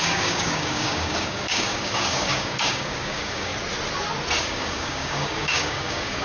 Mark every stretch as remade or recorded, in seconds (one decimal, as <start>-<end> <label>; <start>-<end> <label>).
0.0-3.5 remade; 3.5-4.4 recorded; 4.4-6.2 remade